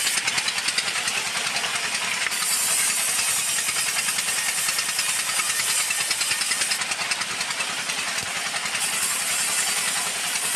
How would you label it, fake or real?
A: real